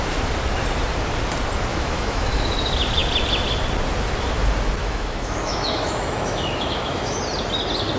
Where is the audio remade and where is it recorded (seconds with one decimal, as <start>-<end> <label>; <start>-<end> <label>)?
0.0-1.7 recorded; 1.7-2.4 remade; 2.4-4.8 recorded; 4.8-7.2 remade; 7.2-8.0 recorded